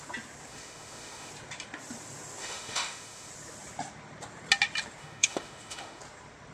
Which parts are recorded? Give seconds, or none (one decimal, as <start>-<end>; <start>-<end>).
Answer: 0.0-0.5; 1.3-2.4; 3.3-5.0; 6.0-6.5